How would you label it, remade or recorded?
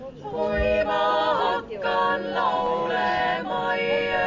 recorded